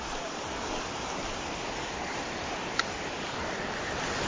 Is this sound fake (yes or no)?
no